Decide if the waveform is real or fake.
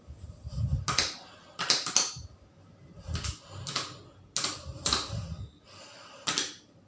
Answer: real